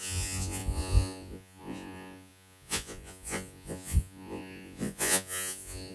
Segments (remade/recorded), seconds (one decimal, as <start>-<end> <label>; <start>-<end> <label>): 0.0-5.9 remade